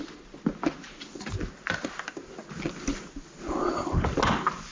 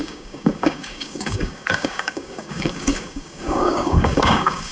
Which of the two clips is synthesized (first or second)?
second